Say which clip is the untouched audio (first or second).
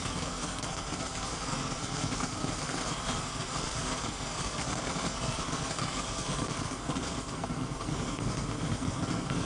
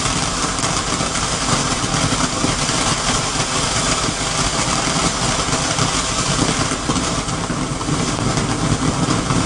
second